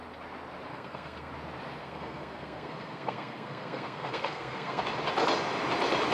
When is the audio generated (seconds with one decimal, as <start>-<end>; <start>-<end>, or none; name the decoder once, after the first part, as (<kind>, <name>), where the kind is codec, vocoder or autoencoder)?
0.7-1.3 (codec, SNAC); 1.8-4.8

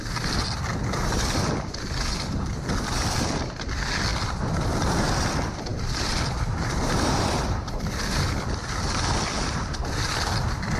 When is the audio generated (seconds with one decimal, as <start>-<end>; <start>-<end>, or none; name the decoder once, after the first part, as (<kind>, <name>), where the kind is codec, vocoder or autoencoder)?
4.1-5.2 (vocoder, BigVGAN v2); 5.7-6.6

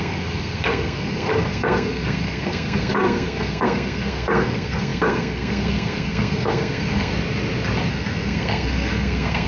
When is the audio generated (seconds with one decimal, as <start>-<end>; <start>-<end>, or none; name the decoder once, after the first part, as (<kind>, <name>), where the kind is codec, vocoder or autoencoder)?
0.0-7.1 (codec, SNAC); 7.9-9.5

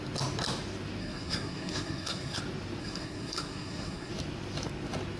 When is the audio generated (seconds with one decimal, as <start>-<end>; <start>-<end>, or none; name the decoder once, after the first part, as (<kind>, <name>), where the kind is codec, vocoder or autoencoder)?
1.0-2.4 (codec, SNAC); 2.8-4.1

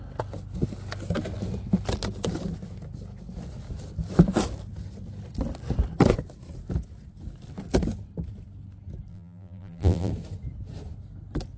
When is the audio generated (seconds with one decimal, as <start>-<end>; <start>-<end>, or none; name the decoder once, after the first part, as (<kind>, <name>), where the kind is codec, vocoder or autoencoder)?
9.1-10.1 (vocoder, BigVGAN v2)

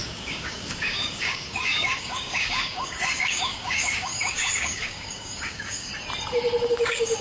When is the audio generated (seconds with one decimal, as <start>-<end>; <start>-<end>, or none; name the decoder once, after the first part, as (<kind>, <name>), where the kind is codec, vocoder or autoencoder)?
0.0-5.9 (codec, DAC); 6.7-7.2

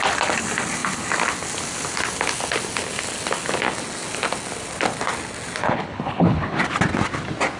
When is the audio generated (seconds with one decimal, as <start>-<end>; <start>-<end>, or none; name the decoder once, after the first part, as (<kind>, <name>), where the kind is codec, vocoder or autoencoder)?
5.6-6.6 (codec, HILCodec)